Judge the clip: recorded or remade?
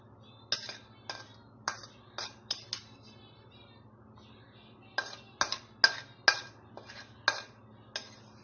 recorded